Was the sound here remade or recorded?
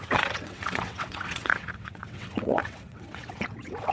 remade